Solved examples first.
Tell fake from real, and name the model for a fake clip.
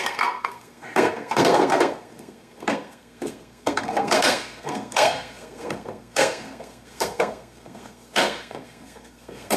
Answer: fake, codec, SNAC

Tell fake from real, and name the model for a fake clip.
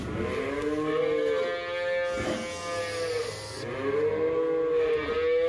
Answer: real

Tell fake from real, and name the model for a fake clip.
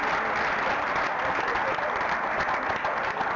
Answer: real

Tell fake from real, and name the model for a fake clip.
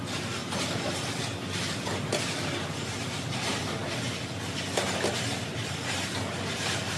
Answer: real